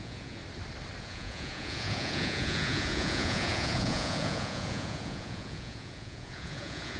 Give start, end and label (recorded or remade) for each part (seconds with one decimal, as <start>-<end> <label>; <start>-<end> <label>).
0.0-0.4 remade; 0.4-1.0 recorded; 1.0-7.0 remade